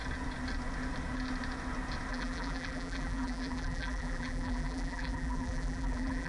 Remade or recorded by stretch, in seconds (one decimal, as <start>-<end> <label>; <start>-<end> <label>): 0.0-2.1 recorded; 2.1-6.3 remade